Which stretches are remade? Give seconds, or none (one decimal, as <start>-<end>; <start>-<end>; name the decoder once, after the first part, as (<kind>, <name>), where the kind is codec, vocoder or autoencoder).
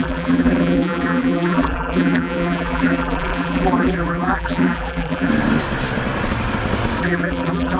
0.0-5.3 (vocoder, BigVGAN v2); 7.0-7.8